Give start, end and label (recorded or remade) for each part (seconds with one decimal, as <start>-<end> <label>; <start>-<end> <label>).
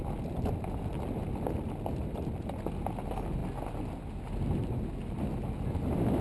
0.0-6.2 recorded